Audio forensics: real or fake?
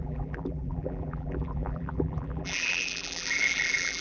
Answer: fake